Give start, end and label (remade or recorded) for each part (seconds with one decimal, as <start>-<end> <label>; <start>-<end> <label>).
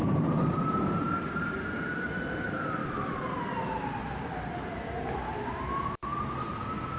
0.0-0.6 remade; 0.6-2.8 recorded; 2.8-3.4 remade; 3.4-7.0 recorded